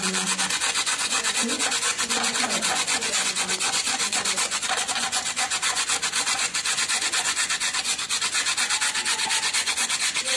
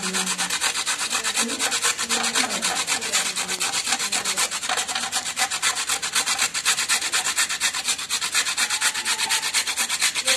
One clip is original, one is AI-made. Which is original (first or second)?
second